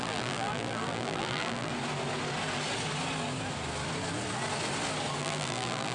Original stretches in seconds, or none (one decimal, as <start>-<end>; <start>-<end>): 1.7-5.2